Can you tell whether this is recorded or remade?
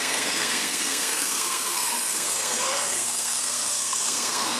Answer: remade